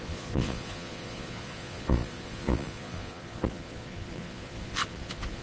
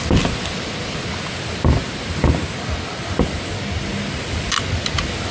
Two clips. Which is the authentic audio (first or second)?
second